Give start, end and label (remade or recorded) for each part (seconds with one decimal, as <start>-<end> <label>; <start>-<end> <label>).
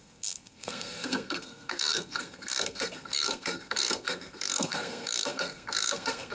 0.0-6.3 remade